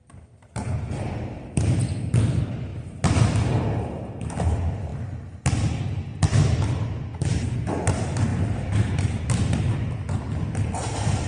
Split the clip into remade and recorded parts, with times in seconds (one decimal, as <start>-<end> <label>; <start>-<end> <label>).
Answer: 0.0-8.3 recorded; 8.3-9.4 remade; 9.4-11.3 recorded